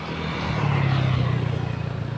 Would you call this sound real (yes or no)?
yes